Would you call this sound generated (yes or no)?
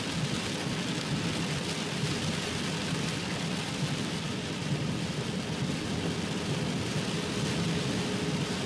no